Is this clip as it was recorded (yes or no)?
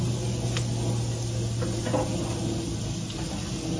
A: yes